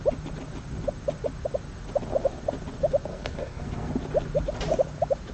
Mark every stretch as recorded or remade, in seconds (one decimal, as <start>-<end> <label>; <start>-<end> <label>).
0.0-3.1 recorded; 3.1-3.9 remade; 3.9-5.3 recorded